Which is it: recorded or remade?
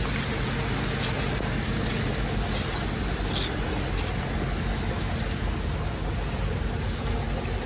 recorded